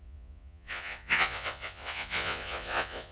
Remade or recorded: remade